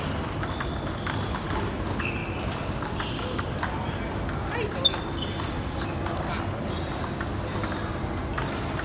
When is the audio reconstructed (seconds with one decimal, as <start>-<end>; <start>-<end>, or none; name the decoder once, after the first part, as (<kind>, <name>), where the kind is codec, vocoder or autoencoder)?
none

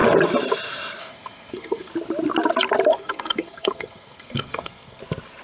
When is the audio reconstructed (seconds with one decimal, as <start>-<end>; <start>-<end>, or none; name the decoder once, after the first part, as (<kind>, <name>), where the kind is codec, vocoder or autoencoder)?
1.0-1.9 (codec, SNAC); 2.9-5.0

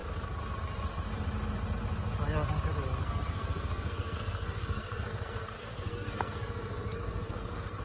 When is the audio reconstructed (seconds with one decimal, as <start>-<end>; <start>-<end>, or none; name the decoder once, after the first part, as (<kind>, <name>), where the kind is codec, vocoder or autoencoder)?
3.0-7.8 (codec, SNAC)

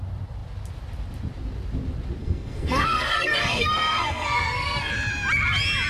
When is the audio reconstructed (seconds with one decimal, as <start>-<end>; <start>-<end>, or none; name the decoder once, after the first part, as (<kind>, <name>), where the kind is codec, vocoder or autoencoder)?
2.2-4.9 (codec, SNAC)

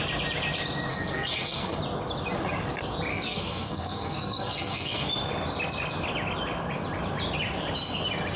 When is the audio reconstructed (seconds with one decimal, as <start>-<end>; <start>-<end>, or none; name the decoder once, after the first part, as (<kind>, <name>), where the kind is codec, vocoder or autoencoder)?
0.9-1.8 (codec, SNAC); 3.1-5.1